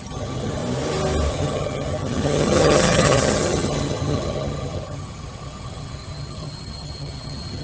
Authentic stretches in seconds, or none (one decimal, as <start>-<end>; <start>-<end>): 0.6-1.3